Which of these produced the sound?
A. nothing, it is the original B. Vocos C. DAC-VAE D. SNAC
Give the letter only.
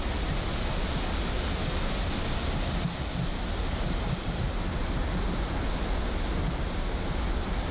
A